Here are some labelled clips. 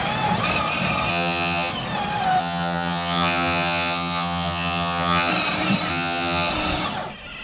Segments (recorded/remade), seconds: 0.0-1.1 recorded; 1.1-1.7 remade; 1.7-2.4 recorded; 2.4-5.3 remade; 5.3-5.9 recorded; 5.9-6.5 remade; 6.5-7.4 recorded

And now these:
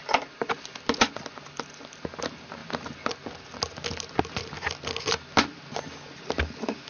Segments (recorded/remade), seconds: 0.0-6.9 recorded

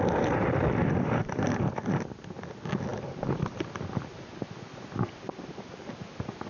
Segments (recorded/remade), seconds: 0.0-0.8 recorded; 0.8-1.8 remade; 1.8-2.9 recorded; 2.9-3.6 remade; 3.6-6.5 recorded

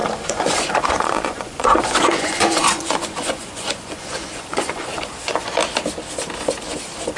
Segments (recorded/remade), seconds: 0.0-5.6 remade; 5.6-7.2 recorded

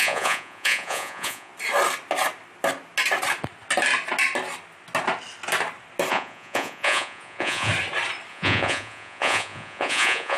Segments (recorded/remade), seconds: 0.0-1.5 remade; 1.5-6.1 recorded; 6.1-7.7 remade; 7.7-8.3 recorded; 8.3-10.4 remade

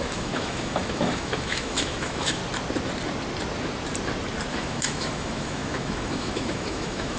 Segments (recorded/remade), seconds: 0.0-2.4 remade; 2.4-4.5 recorded; 4.5-7.2 remade

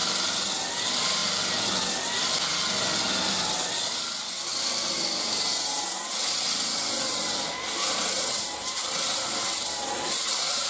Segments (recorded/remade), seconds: 0.0-0.7 recorded; 0.7-1.2 remade; 1.2-3.3 recorded; 3.3-4.5 remade; 4.5-8.3 recorded; 8.3-10.7 remade